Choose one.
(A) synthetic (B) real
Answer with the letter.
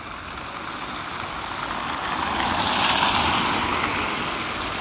B